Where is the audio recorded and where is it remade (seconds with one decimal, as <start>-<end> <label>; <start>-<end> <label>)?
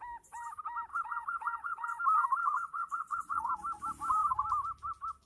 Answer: 0.0-0.9 recorded; 0.9-2.0 remade; 2.0-2.4 recorded; 2.4-3.5 remade; 3.5-5.3 recorded